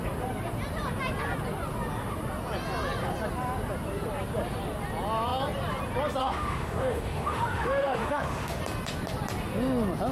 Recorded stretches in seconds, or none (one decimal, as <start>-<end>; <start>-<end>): 0.0-6.2; 8.6-10.1

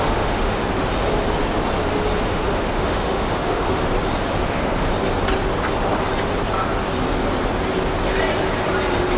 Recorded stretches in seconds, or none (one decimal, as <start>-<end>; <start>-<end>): 0.6-2.3; 3.9-4.4; 4.9-9.2